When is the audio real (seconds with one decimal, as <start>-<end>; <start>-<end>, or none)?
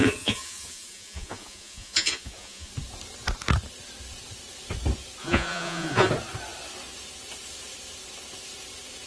2.7-5.2; 6.1-9.1